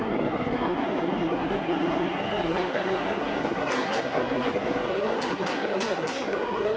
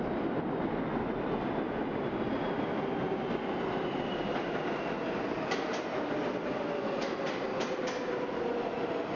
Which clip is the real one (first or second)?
second